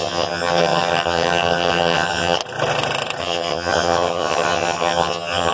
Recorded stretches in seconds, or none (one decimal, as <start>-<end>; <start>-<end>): 2.4-3.2